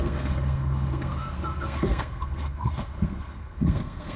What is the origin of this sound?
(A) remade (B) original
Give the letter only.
A